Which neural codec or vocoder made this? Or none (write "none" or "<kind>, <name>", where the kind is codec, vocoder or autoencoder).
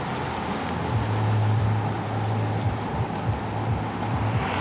none